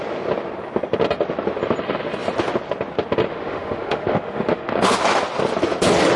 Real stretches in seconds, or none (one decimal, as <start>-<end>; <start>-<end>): 0.0-3.3; 5.0-6.2